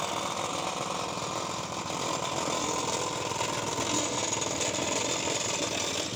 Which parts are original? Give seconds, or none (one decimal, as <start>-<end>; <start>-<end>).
0.0-6.2